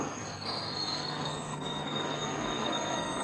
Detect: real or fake fake